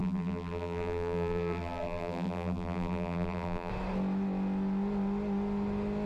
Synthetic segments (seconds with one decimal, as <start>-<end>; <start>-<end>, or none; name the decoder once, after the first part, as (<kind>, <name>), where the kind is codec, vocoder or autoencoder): 0.0-3.7 (vocoder, BigVGAN v2)